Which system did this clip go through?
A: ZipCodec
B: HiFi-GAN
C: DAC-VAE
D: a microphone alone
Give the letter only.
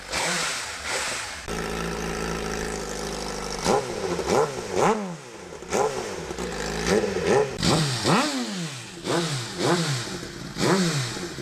D